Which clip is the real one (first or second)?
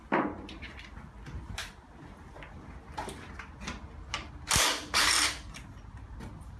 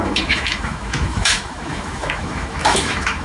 first